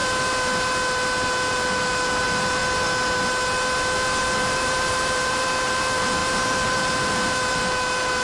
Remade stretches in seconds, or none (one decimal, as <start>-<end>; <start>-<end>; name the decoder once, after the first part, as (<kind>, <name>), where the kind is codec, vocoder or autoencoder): 1.5-2.6 (vocoder, BigVGAN v2); 4.4-8.2